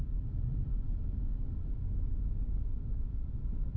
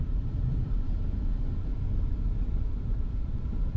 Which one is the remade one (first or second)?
second